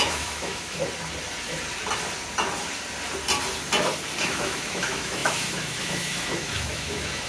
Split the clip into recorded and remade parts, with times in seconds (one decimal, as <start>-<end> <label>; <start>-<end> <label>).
0.0-0.8 remade; 0.8-4.2 recorded; 4.2-7.3 remade